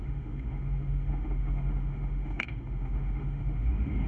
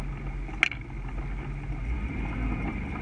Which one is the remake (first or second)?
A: first